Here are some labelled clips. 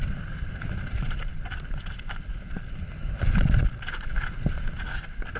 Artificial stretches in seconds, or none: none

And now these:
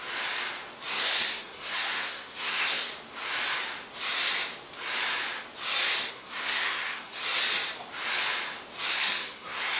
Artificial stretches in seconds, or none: 0.9-2.9; 6.1-7.2; 8.9-9.8